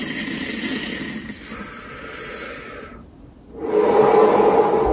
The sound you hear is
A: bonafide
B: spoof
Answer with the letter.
A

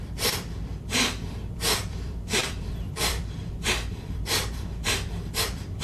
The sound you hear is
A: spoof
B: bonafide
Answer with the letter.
A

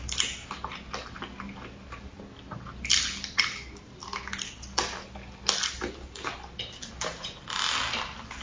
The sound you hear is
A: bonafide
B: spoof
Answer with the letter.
A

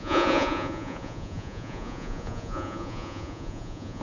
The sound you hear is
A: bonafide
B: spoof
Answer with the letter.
B